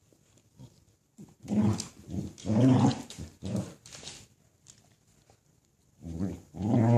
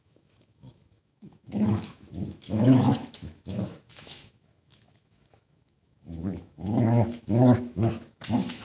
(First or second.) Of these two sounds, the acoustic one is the first